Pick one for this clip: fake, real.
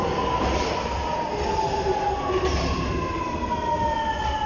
real